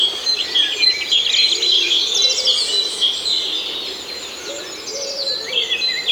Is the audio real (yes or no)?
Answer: yes